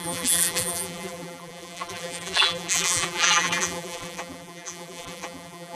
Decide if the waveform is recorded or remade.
remade